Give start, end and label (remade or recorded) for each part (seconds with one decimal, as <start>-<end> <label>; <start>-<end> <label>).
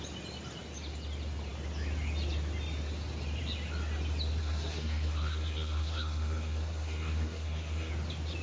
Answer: 0.0-4.4 recorded; 4.4-7.9 remade; 7.9-8.4 recorded